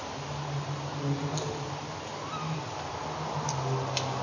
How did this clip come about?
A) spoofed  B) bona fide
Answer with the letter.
B